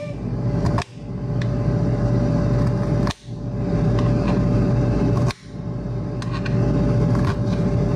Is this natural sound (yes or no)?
yes